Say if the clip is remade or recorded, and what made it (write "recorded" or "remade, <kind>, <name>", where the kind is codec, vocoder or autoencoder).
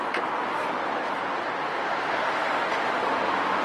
recorded